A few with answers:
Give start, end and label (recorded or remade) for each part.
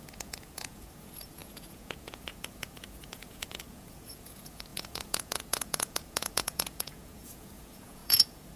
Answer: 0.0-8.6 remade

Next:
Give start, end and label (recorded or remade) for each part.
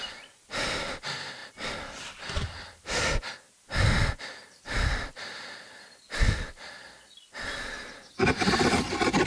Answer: 0.0-9.3 recorded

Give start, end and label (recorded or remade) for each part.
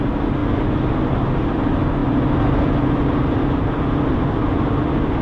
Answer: 0.0-5.2 recorded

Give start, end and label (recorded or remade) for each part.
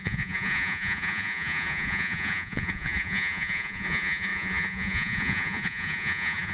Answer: 0.0-6.5 remade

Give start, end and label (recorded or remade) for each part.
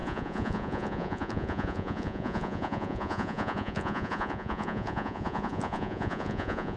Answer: 0.0-6.8 remade